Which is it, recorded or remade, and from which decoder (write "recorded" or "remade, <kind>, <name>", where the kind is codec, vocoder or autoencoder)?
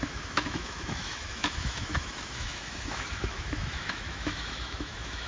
remade, autoencoder, DAC-VAE